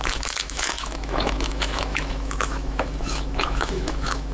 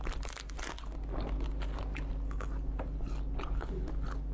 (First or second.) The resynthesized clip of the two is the first